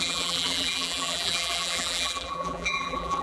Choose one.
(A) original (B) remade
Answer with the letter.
B